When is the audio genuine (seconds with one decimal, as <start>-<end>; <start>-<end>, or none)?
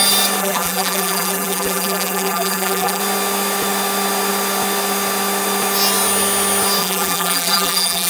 0.0-0.4; 3.0-6.8